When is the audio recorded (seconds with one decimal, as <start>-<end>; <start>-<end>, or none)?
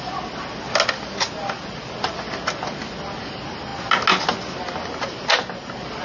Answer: 0.0-6.0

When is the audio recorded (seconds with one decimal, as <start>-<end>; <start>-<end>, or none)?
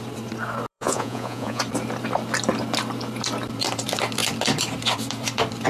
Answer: 0.0-0.7; 1.6-5.7